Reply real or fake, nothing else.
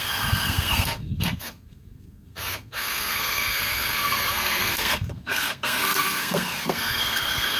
fake